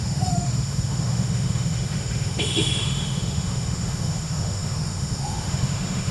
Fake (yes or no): yes